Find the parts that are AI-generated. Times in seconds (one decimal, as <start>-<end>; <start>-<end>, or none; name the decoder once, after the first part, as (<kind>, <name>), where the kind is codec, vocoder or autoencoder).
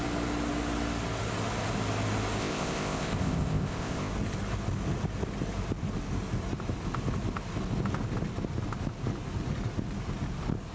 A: 2.4-4.1 (codec, ZipCodec)